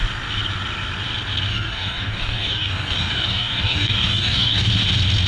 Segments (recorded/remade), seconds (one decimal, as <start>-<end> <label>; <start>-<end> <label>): 0.0-1.5 recorded; 1.5-4.7 remade; 4.7-5.3 recorded